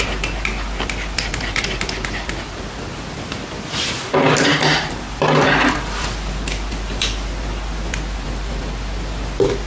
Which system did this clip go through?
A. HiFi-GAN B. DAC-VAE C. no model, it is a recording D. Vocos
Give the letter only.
C